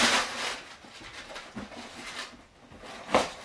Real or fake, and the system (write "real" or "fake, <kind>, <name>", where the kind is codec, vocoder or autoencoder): real